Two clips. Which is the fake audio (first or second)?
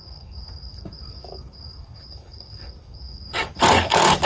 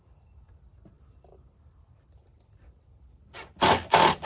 first